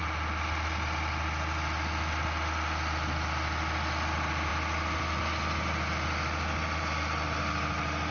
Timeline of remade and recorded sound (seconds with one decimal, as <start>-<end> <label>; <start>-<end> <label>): 0.0-8.1 recorded